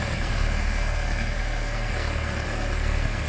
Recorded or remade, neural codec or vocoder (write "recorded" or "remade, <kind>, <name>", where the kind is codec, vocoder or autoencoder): remade, codec, SNAC